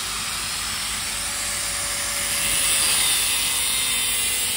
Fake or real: real